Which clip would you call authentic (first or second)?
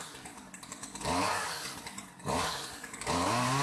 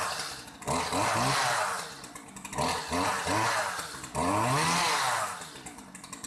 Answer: second